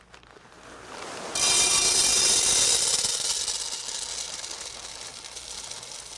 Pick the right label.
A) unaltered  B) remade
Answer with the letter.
A